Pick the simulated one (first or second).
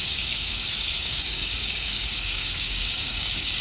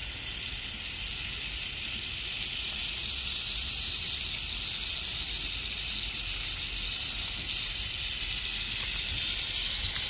first